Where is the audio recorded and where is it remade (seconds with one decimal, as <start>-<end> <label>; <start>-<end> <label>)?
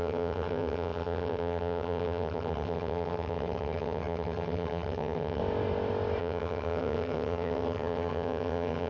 0.0-5.4 remade; 5.4-6.2 recorded; 6.2-8.9 remade